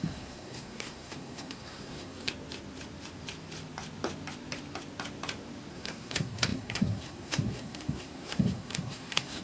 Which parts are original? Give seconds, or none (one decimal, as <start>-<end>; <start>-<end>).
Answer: 2.3-5.7

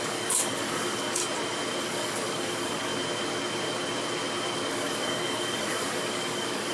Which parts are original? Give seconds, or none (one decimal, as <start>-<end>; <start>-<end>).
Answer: 1.2-1.8; 2.9-4.7

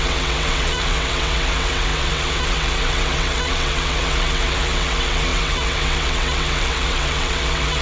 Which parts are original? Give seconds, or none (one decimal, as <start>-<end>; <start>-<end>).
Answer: none

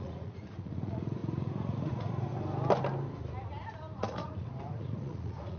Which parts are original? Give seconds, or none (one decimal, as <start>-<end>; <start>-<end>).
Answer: 2.3-4.0

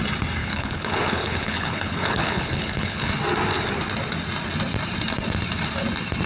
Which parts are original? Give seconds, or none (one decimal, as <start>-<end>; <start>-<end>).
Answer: 0.0-0.4; 3.1-6.3

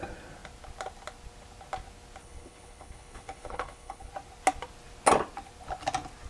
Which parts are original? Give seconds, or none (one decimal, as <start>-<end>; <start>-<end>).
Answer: 0.0-2.2; 4.1-6.3

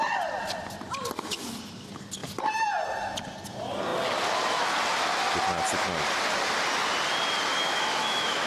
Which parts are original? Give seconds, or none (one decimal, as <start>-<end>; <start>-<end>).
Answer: 0.0-7.5